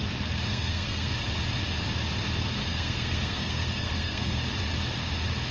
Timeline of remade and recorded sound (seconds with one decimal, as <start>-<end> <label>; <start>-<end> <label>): 0.0-0.5 recorded; 0.5-1.1 remade; 1.1-2.6 recorded; 2.6-4.4 remade; 4.4-5.5 recorded